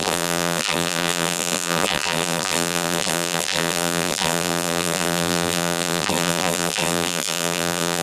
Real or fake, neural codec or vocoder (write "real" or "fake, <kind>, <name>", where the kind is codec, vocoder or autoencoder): fake, vocoder, BigVGAN v2